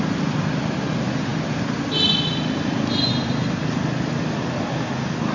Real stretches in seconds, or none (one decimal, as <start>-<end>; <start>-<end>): 0.0-5.3